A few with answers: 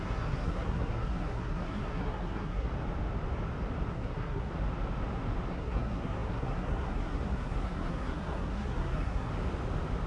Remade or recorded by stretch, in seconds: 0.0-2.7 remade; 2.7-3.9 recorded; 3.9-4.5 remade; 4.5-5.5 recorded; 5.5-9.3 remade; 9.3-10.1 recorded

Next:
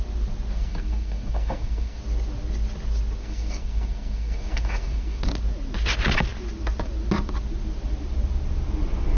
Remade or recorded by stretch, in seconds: 0.0-0.5 recorded; 0.5-2.0 remade; 2.0-3.2 recorded; 3.2-5.2 remade; 5.2-9.2 recorded